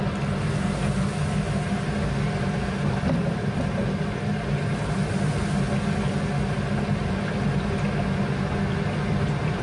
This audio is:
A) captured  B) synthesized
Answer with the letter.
A